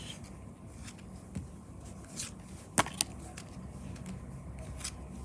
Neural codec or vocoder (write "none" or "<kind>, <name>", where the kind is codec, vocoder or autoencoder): none